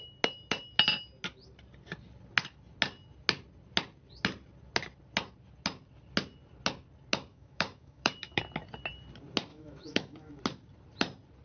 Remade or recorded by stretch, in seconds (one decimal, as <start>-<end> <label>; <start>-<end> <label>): 0.0-7.3 recorded; 7.3-8.4 remade; 8.4-9.5 recorded; 9.5-10.4 remade; 10.4-11.4 recorded